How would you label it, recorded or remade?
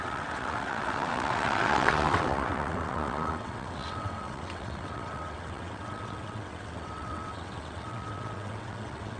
remade